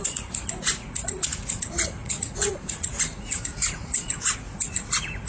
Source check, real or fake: fake